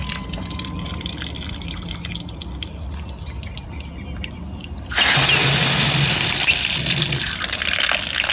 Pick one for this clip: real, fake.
real